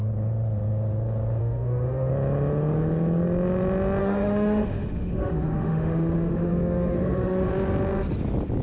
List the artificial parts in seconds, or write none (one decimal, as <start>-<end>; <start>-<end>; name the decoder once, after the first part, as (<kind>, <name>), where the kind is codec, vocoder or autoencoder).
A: 1.4-2.1 (autoencoder, DAC-VAE); 4.0-7.5